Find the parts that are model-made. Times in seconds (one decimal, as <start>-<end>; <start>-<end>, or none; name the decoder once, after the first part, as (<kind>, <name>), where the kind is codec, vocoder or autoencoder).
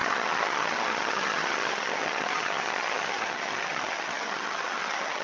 0.0-5.2 (vocoder, HiFi-GAN)